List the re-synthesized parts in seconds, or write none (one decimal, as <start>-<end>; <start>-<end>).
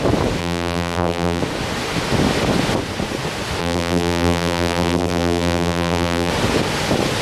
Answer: 0.4-1.4; 3.6-6.3